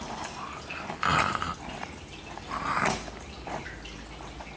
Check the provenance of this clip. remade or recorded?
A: recorded